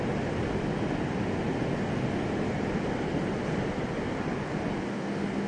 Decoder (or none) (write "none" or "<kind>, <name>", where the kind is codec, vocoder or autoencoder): none